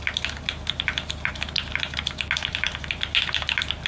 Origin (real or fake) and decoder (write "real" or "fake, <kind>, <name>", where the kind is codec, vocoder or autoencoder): real